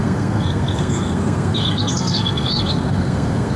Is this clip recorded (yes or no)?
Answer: no